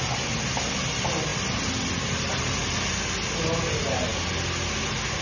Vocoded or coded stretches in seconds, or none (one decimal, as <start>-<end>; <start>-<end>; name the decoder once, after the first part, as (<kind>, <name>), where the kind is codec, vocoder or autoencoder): 1.3-2.4 (vocoder, BigVGAN v2)